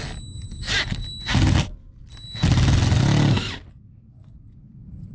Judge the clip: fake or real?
real